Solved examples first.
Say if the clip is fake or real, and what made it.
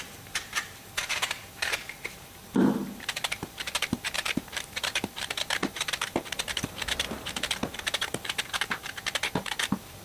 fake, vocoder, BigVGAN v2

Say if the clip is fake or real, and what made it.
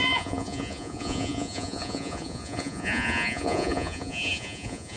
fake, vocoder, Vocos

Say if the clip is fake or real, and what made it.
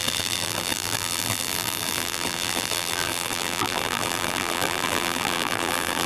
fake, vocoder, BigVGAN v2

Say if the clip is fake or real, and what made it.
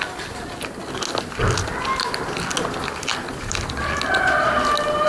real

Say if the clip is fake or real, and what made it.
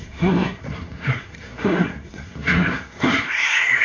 fake, codec, SNAC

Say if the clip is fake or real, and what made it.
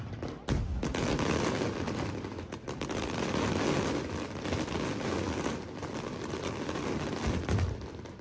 real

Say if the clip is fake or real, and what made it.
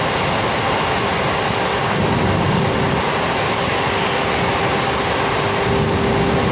real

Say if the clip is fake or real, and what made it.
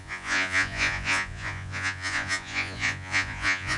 fake, vocoder, Vocos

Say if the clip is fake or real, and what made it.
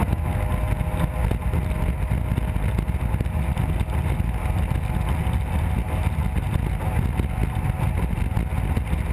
real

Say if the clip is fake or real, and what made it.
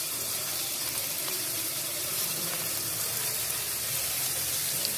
fake, vocoder, BigVGAN v2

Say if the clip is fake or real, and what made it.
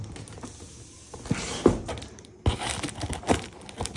real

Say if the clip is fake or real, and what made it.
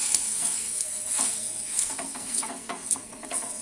fake, codec, SNAC